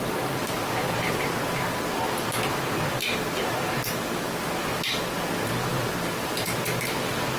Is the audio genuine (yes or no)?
yes